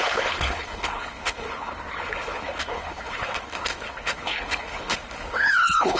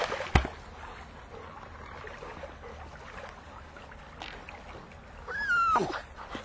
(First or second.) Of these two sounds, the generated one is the first